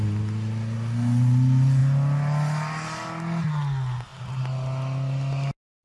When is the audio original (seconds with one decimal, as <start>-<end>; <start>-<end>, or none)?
0.0-5.8